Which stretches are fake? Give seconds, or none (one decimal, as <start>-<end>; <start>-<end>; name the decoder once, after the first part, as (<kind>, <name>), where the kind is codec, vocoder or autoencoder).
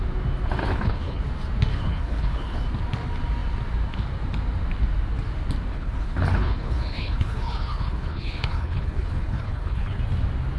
0.6-1.2 (codec, HILCodec); 1.7-2.6; 5.7-10.0